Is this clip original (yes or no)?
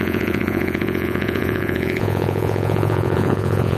no